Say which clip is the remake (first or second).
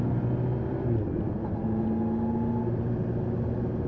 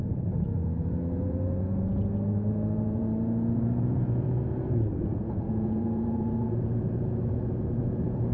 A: second